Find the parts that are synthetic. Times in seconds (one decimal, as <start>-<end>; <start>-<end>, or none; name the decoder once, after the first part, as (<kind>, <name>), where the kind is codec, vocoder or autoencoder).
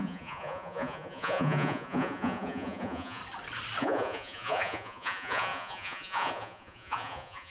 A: 0.0-3.2 (vocoder, Vocos); 3.8-7.5